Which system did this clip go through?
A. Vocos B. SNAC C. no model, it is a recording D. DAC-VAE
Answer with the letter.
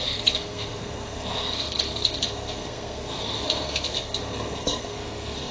B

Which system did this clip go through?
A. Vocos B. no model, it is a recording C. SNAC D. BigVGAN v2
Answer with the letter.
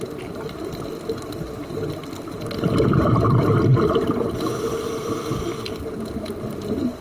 B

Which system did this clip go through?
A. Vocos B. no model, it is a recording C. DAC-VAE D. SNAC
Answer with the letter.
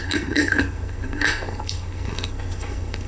D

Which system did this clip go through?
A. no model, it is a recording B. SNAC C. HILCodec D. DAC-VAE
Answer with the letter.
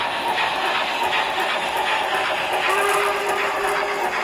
A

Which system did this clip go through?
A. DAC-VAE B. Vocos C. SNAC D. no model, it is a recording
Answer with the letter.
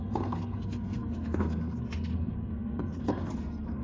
C